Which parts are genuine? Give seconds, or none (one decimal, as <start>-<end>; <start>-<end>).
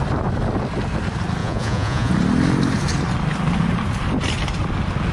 0.0-1.4; 2.1-5.1